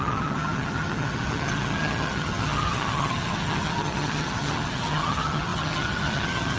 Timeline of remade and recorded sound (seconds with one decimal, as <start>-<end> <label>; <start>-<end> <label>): 0.0-6.6 remade